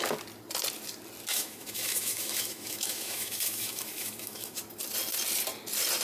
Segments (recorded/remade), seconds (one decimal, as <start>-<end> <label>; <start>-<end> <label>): 0.0-1.3 recorded; 1.3-4.6 remade; 4.6-6.0 recorded